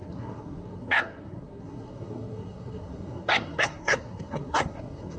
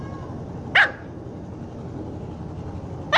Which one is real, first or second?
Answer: second